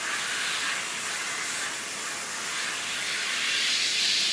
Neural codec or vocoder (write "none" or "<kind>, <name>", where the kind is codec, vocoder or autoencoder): none